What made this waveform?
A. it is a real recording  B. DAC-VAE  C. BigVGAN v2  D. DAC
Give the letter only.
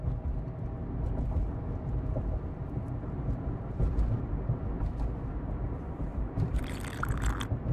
A